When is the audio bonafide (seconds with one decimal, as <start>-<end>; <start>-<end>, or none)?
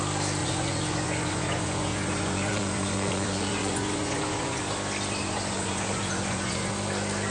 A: 0.0-0.4; 4.6-5.2; 6.7-7.3